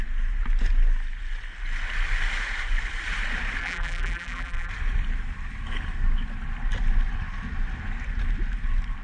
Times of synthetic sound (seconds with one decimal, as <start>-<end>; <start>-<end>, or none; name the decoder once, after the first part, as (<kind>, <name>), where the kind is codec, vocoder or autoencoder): 3.6-4.7 (vocoder, BigVGAN v2)